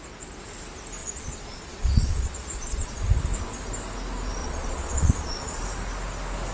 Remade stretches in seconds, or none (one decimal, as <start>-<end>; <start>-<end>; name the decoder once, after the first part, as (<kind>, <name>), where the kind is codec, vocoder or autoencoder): 1.0-3.0 (vocoder, Vocos); 4.4-5.6